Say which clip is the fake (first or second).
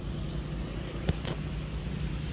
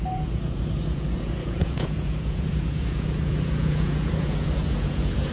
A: second